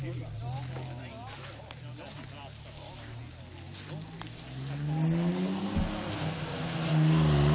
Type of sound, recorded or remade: recorded